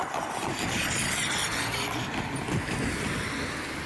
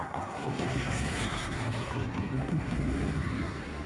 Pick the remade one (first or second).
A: second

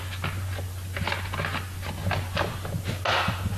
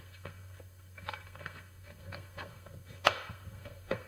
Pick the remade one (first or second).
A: second